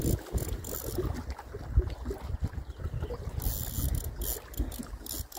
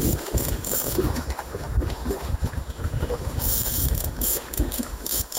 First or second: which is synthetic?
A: second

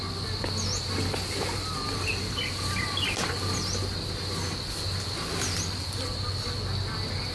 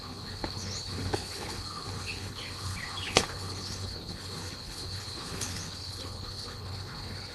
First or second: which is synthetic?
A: second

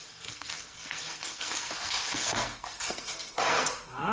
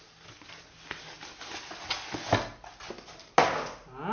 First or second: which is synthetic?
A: first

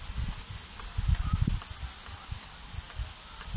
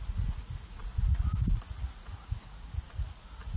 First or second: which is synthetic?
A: second